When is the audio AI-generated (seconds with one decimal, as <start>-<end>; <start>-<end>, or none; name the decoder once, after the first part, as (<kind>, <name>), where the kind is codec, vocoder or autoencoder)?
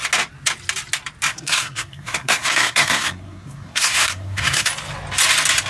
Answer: 1.3-4.7 (codec, SNAC)